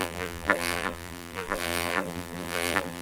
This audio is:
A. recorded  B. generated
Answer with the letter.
B